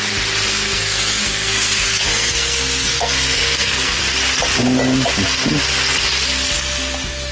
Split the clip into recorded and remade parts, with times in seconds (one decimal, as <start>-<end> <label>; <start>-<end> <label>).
0.0-0.5 recorded; 0.5-4.0 remade; 4.0-7.3 recorded